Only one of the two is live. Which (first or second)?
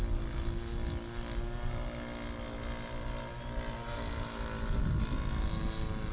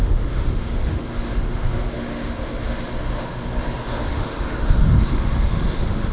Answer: first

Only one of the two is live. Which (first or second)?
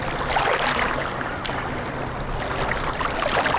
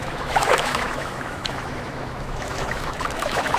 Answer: first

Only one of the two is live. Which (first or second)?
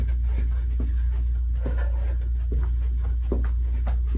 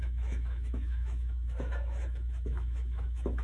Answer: first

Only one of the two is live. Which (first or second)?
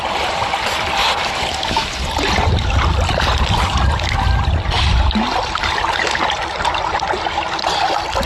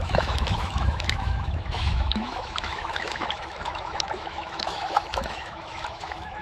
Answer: first